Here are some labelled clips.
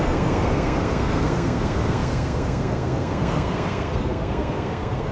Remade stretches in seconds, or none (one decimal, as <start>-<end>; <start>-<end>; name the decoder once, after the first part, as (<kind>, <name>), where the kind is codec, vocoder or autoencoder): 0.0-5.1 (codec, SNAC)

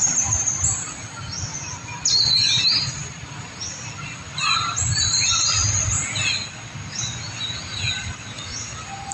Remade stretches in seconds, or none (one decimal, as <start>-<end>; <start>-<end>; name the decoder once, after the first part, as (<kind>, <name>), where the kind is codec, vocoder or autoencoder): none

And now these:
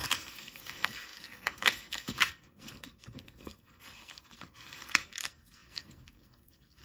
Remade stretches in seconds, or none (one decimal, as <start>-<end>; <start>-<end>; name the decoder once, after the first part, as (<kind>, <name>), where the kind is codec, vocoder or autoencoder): 0.0-6.8 (codec, SNAC)

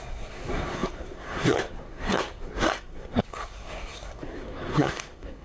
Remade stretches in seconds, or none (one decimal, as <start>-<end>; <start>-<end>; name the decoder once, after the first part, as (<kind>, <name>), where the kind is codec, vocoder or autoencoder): 0.0-5.4 (codec, SNAC)